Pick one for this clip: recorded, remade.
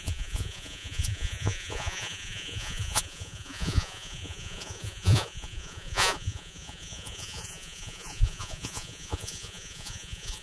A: remade